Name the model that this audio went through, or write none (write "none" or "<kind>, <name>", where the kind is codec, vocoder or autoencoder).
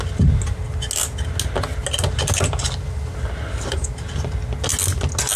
none